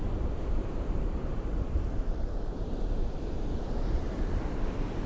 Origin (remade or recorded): remade